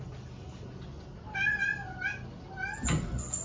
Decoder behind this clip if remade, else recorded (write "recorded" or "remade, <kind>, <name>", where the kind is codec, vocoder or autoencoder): recorded